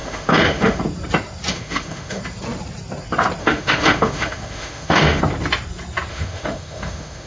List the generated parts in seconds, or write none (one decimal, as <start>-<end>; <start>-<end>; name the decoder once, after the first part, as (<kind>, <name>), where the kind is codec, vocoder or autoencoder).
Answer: 0.0-0.8 (autoencoder, DAC-VAE); 1.5-2.2; 3.4-5.2; 6.1-7.3